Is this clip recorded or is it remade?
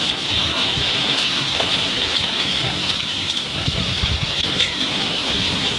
remade